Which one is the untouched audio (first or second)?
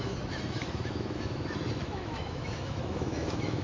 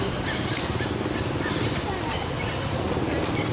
second